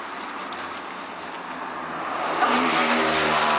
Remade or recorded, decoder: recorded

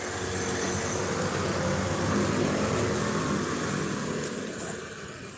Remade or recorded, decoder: recorded